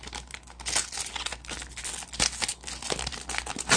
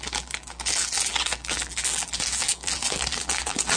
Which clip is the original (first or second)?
first